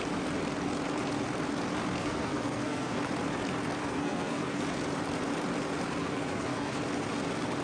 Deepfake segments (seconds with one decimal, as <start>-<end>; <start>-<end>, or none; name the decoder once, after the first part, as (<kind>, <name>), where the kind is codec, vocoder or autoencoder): 2.0-3.0 (codec, SNAC); 3.8-4.6; 6.0-6.8